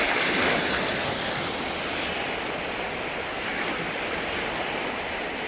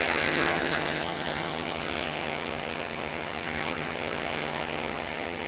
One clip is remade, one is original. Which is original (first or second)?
first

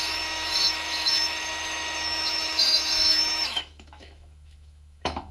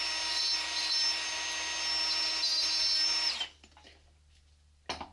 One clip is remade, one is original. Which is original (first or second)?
second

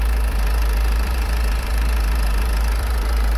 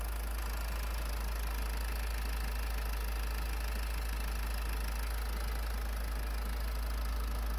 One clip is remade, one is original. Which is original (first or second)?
second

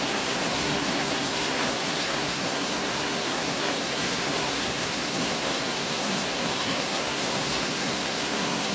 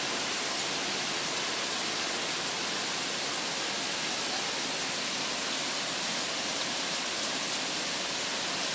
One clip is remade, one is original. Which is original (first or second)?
second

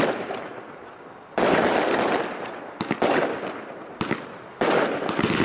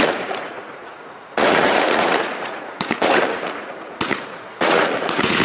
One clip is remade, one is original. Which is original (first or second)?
first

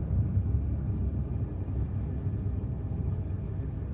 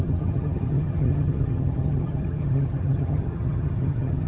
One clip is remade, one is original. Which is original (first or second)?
first